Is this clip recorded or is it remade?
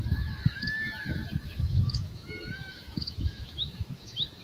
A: remade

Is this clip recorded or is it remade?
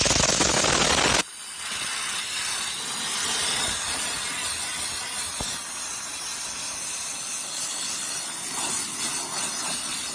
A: recorded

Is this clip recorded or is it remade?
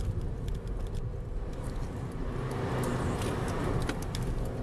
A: recorded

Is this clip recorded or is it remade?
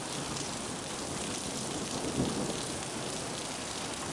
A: recorded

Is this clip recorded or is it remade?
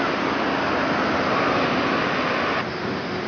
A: recorded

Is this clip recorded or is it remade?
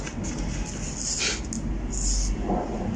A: recorded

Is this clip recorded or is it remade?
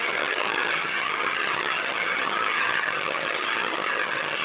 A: remade